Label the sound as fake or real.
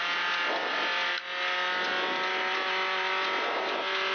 real